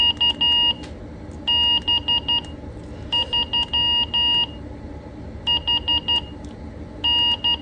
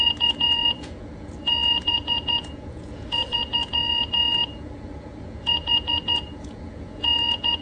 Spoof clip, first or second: second